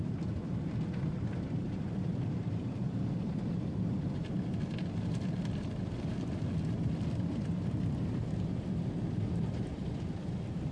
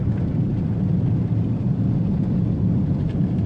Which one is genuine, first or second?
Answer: second